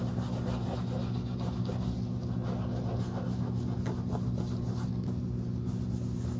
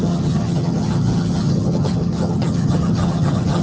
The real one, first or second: first